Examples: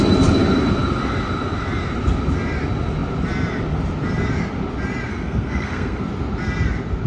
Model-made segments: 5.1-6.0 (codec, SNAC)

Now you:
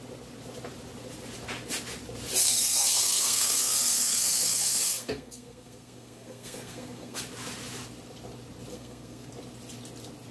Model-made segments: 2.4-7.2 (codec, SNAC); 8.7-9.3

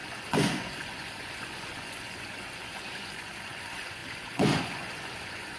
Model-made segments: 0.0-5.6 (vocoder, Vocos)

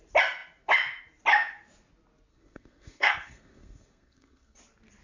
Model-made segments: 2.3-4.6 (codec, SNAC)

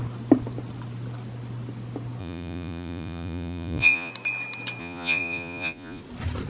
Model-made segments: 2.2-4.1 (vocoder, Vocos); 4.8-6.0

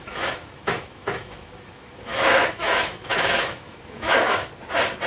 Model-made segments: 0.0-4.5 (autoencoder, DAC-VAE)

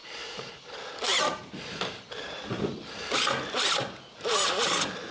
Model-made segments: 0.0-0.5 (vocoder, BigVGAN v2); 1.1-2.6

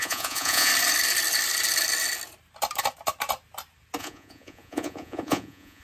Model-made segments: 0.0-0.7 (vocoder, Vocos); 4.0-5.8